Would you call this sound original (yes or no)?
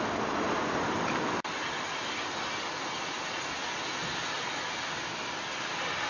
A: yes